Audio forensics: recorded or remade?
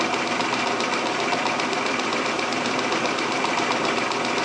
recorded